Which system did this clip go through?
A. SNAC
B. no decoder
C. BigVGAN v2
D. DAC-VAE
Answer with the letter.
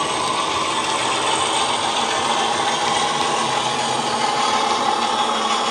B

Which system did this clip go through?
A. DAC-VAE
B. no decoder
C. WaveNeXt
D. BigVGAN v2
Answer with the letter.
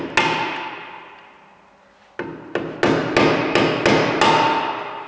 B